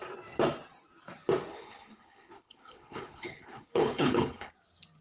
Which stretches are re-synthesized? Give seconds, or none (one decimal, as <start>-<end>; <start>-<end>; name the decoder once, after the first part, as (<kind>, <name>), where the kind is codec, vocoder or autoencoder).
1.5-4.5 (codec, HILCodec)